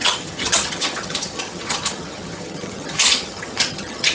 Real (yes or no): no